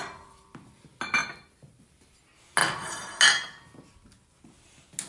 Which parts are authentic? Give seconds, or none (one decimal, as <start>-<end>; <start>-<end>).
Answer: 0.0-5.1